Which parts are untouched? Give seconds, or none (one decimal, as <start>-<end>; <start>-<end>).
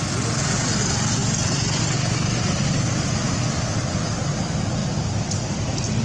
0.0-6.0